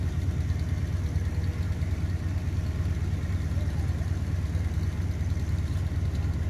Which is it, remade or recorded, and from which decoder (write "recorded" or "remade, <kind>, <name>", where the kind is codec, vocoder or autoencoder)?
recorded